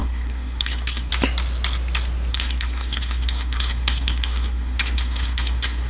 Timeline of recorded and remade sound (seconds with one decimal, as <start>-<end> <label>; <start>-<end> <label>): 0.0-1.1 remade; 1.1-2.3 recorded; 2.3-5.9 remade